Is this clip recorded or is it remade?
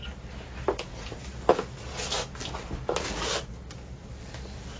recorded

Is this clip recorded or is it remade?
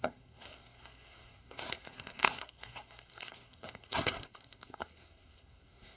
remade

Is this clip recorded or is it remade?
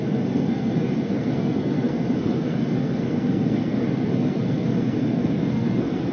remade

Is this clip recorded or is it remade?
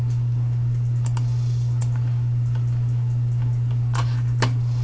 recorded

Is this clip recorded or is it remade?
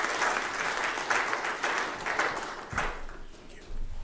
recorded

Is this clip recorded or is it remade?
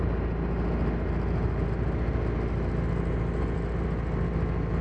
recorded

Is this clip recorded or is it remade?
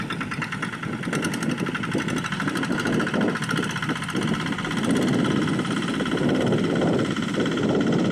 recorded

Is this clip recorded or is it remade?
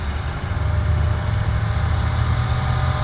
recorded